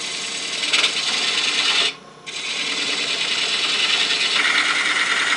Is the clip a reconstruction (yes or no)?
no